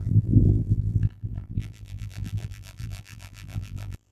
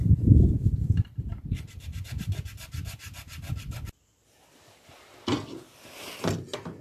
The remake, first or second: first